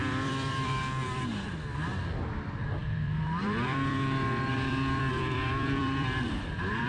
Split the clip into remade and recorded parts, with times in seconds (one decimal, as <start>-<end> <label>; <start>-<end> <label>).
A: 0.0-1.5 remade; 1.5-2.8 recorded; 2.8-6.9 remade